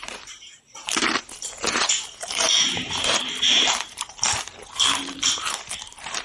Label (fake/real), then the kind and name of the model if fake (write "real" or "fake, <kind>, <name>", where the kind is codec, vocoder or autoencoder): fake, vocoder, BigVGAN v2